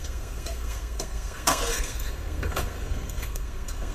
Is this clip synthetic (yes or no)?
yes